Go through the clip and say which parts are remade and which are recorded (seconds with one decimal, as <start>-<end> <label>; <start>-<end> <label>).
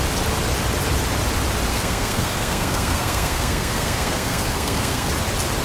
0.0-1.7 recorded; 1.7-5.1 remade; 5.1-5.6 recorded